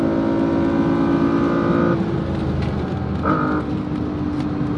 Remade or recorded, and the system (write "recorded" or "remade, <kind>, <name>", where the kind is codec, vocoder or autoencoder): recorded